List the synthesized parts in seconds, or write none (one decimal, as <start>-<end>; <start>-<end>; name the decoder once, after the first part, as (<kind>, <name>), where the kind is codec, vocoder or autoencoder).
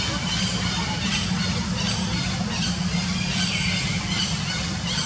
3.9-5.1 (vocoder, BigVGAN v2)